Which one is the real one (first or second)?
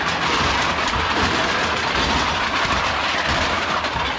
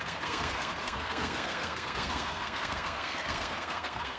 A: first